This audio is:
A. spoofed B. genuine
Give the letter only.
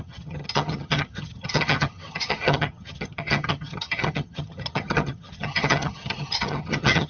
A